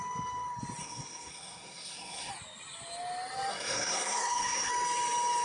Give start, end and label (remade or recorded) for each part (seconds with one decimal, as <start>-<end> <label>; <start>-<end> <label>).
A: 0.0-0.8 recorded; 0.8-2.3 remade; 2.3-3.5 recorded; 3.5-4.7 remade; 4.7-5.4 recorded